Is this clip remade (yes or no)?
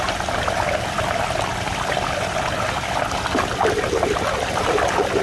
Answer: no